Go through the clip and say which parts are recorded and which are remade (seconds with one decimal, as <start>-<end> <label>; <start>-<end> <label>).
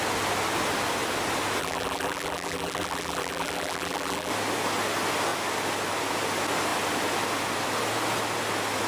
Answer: 0.0-1.6 recorded; 1.6-4.3 remade; 4.3-8.9 recorded